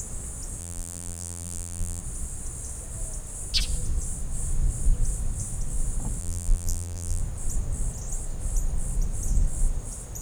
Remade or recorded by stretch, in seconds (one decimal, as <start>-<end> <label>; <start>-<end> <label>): 0.0-0.6 recorded; 0.6-2.0 remade; 2.0-6.2 recorded; 6.2-7.2 remade; 7.2-10.2 recorded